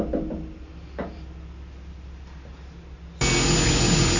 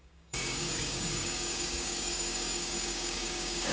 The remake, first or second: second